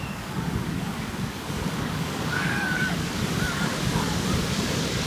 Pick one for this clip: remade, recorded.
remade